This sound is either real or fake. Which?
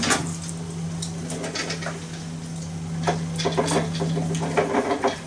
real